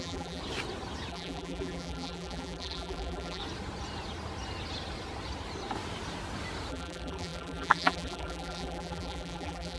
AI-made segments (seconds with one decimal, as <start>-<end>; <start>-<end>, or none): 0.0-0.4; 1.1-3.4; 6.7-9.8